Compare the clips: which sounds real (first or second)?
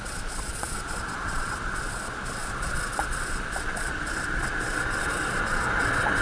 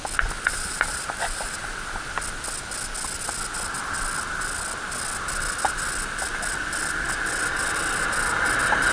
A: second